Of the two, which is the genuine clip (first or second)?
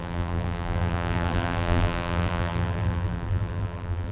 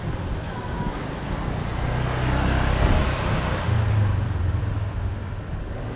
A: second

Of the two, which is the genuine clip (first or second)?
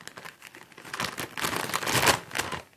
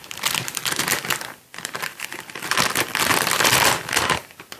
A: first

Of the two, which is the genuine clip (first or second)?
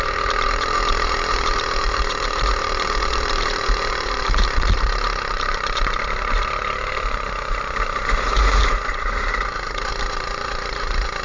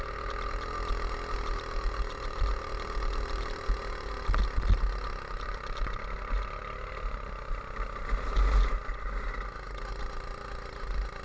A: second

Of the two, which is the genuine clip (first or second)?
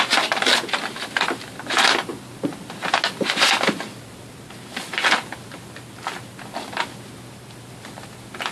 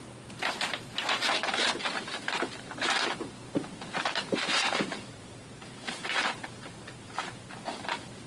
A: first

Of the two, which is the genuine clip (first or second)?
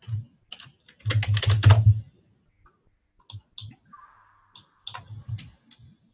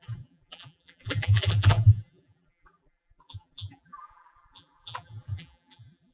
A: first